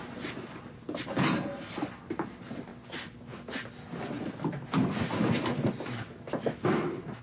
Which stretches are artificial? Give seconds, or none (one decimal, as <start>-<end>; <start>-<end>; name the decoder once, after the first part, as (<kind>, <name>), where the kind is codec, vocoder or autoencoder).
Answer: none